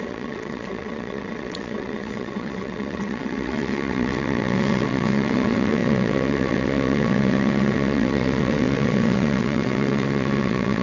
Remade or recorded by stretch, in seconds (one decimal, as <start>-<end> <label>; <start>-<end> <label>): 0.0-10.8 remade